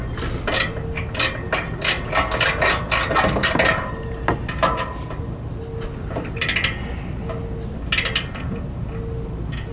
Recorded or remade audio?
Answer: recorded